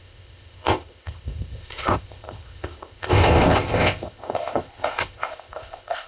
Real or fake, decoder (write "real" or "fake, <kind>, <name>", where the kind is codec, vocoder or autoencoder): fake, codec, ZipCodec